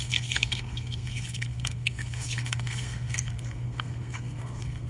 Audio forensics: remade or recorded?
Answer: remade